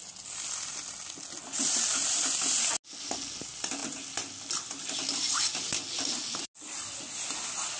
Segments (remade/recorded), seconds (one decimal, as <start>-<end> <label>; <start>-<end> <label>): 0.0-7.8 recorded